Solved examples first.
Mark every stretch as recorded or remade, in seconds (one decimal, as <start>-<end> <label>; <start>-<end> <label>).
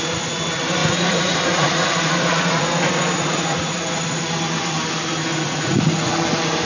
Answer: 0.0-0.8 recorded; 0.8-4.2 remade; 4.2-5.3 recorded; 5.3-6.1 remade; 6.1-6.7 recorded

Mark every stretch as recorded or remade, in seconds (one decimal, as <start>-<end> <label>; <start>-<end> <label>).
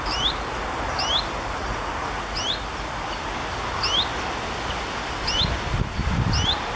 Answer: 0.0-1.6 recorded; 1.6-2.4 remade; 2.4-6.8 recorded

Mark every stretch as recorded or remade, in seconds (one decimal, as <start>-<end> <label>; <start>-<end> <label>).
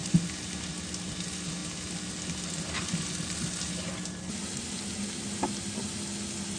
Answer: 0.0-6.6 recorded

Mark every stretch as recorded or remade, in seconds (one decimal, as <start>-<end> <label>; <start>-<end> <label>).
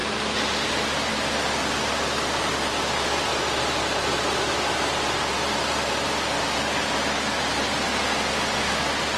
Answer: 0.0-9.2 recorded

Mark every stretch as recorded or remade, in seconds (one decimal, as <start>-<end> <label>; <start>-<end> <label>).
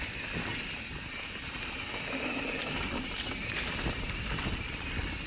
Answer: 0.0-5.3 recorded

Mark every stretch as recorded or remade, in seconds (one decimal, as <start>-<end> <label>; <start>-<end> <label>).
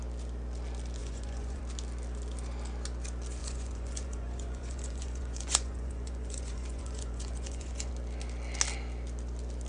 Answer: 0.0-1.0 recorded; 1.0-1.6 remade; 1.6-3.4 recorded; 3.4-7.9 remade; 7.9-9.7 recorded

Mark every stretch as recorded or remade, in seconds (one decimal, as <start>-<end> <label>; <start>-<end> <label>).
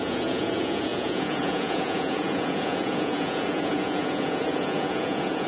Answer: 0.0-5.5 remade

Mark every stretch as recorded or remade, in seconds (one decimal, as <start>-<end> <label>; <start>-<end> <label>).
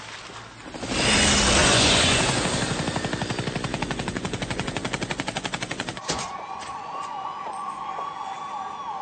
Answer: 0.0-1.6 recorded; 1.6-2.4 remade; 2.4-3.7 recorded; 3.7-8.4 remade; 8.4-9.0 recorded